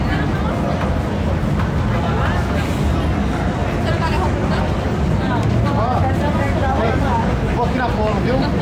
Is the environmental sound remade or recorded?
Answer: recorded